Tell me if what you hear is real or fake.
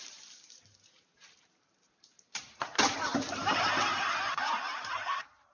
fake